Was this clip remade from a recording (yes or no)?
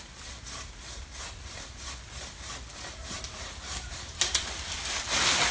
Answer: no